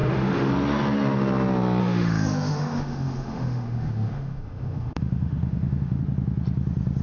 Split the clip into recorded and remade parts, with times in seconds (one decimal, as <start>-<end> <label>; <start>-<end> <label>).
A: 0.0-0.5 remade; 0.5-1.8 recorded; 1.8-6.0 remade; 6.0-7.0 recorded